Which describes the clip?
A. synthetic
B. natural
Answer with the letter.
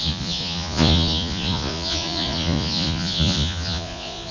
A